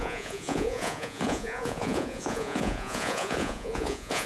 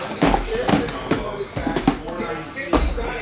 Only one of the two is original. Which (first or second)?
second